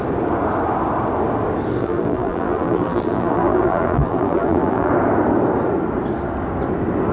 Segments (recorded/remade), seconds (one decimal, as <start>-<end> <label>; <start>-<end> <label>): 0.0-1.8 recorded; 1.8-4.9 remade; 4.9-7.1 recorded